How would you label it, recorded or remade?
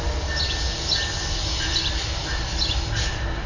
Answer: recorded